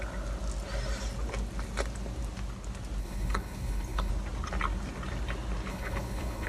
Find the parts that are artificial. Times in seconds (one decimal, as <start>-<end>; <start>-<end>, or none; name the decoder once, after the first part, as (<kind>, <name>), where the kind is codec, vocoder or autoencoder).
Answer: 3.0-4.1 (codec, HILCodec); 5.7-6.5